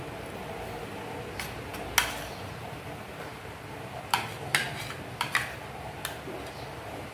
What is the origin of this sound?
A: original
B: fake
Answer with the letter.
A